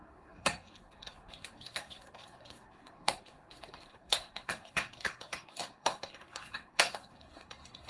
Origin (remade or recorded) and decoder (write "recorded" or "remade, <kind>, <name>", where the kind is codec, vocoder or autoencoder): remade, codec, SNAC